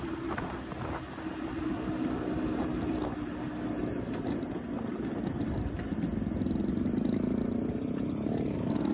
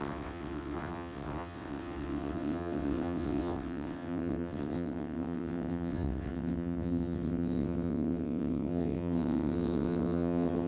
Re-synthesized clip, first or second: second